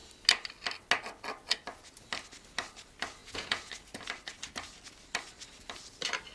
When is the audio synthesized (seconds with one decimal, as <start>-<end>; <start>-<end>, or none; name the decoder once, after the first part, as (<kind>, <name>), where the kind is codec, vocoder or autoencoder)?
3.2-3.7 (vocoder, Vocos)